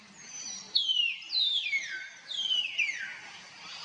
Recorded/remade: remade